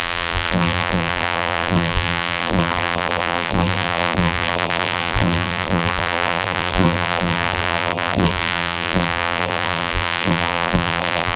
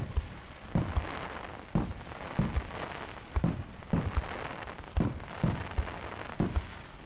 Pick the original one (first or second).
second